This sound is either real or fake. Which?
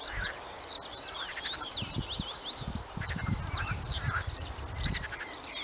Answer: real